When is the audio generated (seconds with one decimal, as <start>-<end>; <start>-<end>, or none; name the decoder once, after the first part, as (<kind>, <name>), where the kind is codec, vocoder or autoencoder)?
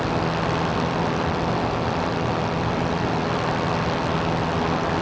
0.7-3.7 (vocoder, BigVGAN v2)